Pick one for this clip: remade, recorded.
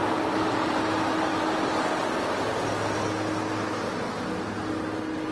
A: recorded